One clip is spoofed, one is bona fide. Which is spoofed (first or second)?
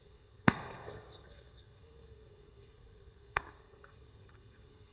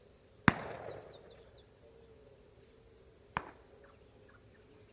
first